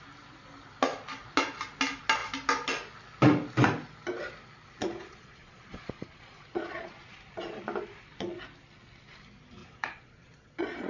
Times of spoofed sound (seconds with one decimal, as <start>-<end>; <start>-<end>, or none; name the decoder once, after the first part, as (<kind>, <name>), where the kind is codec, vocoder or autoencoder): 4.8-7.2 (vocoder, Vocos); 9.6-10.9